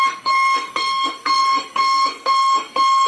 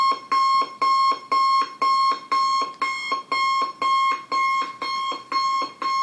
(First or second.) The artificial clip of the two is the first